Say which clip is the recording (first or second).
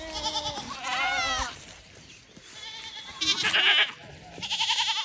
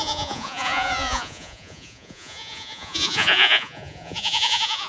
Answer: first